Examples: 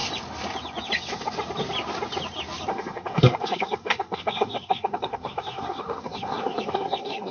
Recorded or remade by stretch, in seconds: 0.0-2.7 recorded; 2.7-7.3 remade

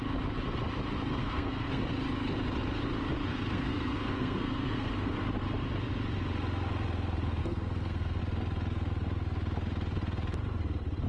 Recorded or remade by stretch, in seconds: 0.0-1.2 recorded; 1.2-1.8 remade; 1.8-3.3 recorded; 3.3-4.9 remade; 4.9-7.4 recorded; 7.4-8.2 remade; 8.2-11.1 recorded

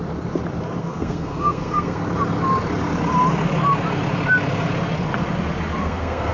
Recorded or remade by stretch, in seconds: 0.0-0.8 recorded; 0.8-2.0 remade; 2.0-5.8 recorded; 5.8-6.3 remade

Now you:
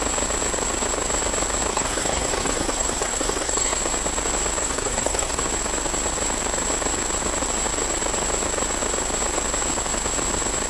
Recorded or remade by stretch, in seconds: 0.0-1.7 recorded; 1.7-3.8 remade; 3.8-4.6 recorded; 4.6-5.4 remade; 5.4-10.7 recorded

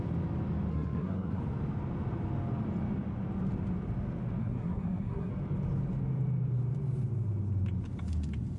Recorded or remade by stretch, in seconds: 0.0-0.7 recorded; 0.7-1.4 remade; 1.4-4.4 recorded; 4.4-5.3 remade; 5.3-8.6 recorded

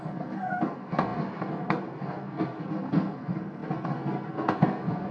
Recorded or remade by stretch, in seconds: 0.0-5.1 remade

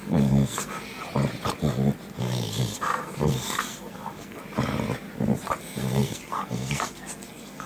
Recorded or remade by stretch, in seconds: 0.0-1.0 remade; 1.0-2.2 recorded; 2.2-4.4 remade; 4.4-5.6 recorded; 5.6-7.7 remade